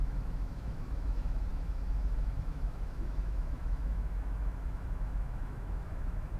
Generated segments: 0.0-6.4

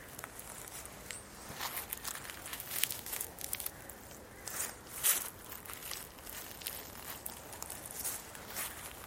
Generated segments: 2.5-3.8